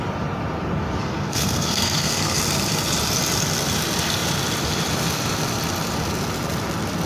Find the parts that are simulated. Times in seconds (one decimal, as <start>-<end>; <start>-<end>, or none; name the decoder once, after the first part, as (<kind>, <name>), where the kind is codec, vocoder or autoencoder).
1.0-2.4 (codec, SNAC)